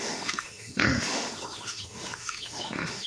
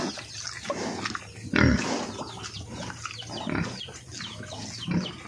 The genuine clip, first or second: second